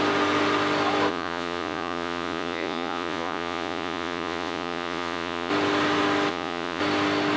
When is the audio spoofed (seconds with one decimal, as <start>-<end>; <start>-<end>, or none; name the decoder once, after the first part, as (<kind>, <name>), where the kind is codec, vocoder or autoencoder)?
1.1-5.5 (vocoder, Vocos); 6.3-6.8

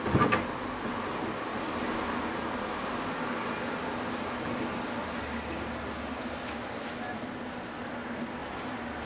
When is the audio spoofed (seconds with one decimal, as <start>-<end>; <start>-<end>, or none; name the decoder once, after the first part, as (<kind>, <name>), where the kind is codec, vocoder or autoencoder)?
none